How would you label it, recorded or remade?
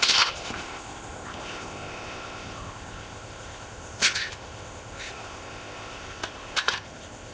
remade